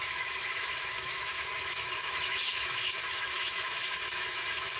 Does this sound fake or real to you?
fake